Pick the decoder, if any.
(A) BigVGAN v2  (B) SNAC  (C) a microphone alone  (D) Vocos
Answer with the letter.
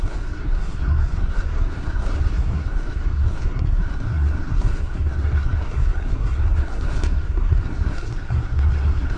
B